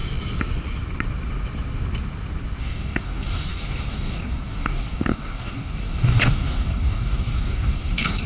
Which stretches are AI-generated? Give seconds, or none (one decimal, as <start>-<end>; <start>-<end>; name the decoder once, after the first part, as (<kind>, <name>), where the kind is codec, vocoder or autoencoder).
2.6-8.3 (codec, DAC)